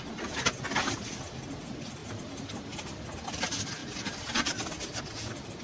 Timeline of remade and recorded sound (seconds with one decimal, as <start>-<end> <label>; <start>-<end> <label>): 0.0-5.6 recorded